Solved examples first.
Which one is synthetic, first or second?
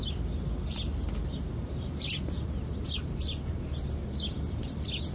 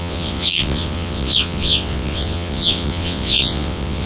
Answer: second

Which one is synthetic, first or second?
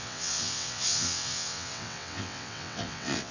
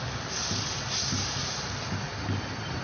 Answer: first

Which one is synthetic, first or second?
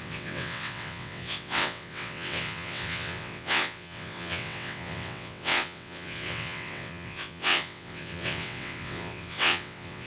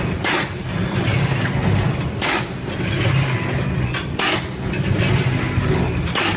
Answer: first